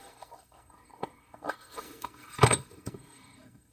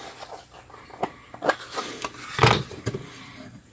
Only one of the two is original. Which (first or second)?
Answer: second